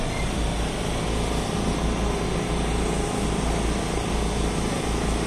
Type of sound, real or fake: real